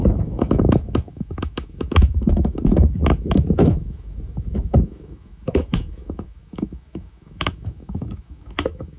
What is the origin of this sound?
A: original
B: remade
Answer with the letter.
B